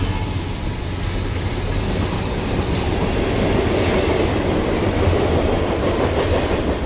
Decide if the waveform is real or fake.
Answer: real